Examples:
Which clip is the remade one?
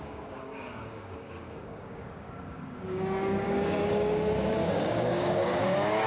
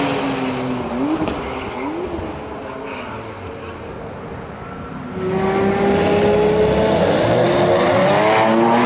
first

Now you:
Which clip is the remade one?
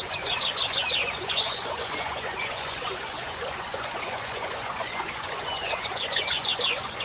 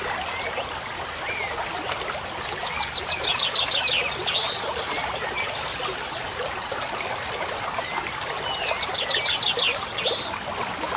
first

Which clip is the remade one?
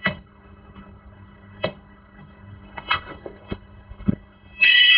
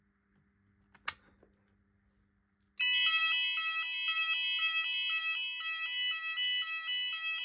first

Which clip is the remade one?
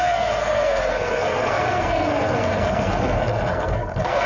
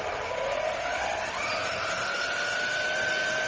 first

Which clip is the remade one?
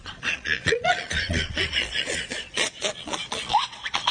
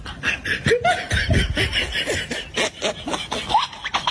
first